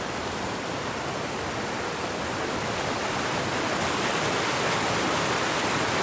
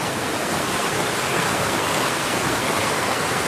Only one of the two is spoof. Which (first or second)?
second